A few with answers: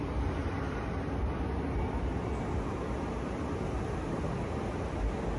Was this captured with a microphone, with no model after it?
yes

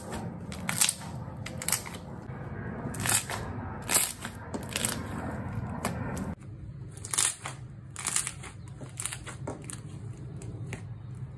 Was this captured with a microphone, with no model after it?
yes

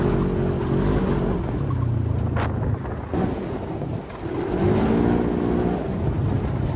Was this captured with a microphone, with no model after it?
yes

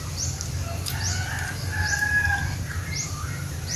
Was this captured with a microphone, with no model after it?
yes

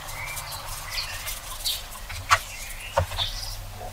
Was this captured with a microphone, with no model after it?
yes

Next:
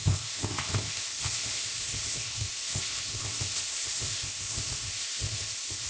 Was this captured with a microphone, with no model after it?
no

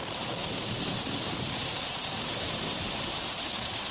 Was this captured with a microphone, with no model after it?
no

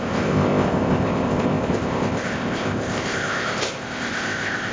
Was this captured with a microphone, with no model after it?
no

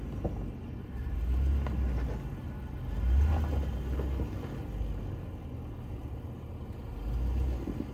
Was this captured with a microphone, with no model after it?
yes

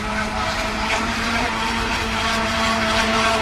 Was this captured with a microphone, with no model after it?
no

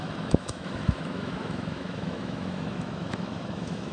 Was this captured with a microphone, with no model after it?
no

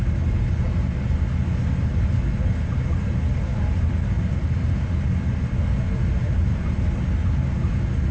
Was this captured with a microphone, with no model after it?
yes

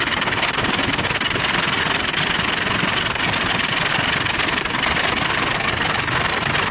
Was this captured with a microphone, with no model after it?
yes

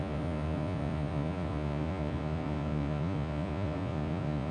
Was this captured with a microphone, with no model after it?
no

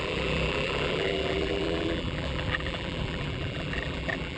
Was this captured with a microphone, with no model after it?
no